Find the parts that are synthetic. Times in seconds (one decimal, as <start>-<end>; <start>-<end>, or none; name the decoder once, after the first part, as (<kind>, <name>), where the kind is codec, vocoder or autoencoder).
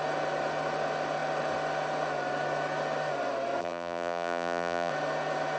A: 3.6-4.9 (vocoder, BigVGAN v2)